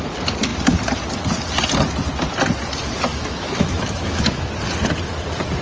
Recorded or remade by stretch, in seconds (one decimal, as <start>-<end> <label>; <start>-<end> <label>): 0.0-3.1 recorded; 3.1-4.5 remade; 4.5-5.6 recorded